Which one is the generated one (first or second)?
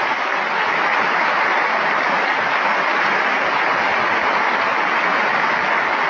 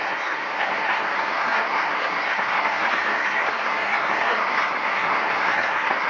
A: second